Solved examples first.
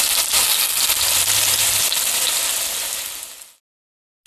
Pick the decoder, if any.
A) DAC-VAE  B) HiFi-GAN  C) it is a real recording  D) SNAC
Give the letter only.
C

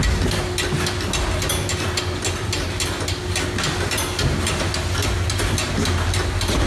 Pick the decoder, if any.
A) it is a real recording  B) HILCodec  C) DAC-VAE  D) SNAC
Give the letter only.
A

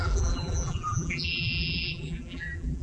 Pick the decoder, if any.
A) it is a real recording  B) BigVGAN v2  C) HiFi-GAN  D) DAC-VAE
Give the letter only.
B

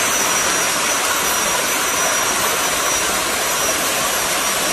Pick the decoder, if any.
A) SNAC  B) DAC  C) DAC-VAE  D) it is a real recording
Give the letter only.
D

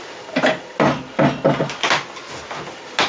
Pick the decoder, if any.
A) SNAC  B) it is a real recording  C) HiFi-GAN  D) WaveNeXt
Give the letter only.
B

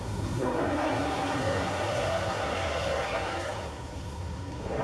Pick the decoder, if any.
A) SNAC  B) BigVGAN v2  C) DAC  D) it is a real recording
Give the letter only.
A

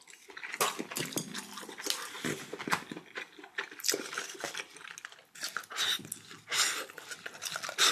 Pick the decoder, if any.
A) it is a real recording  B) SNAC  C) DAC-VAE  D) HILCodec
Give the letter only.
A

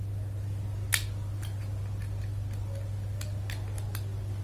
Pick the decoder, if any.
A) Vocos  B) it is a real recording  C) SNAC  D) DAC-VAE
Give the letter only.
B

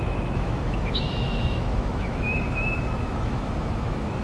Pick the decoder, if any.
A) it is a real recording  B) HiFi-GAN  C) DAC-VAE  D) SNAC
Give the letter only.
C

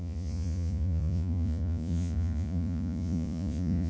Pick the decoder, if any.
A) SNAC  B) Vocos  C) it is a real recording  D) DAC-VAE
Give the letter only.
B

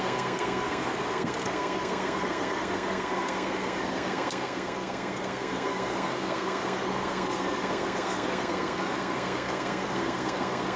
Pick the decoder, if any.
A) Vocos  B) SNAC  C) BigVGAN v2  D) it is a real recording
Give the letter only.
B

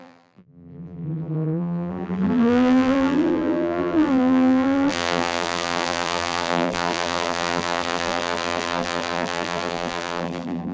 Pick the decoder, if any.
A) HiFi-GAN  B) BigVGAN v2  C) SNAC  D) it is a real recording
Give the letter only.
B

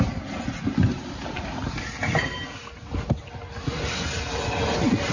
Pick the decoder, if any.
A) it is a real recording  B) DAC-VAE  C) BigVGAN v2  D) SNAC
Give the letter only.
A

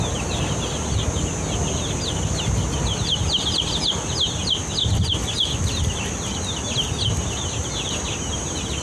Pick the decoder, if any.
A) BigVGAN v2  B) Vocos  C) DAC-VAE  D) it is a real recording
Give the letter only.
D